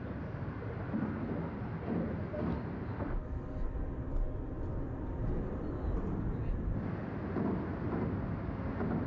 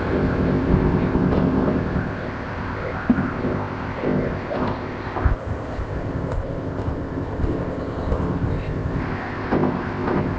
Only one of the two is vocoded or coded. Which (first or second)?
second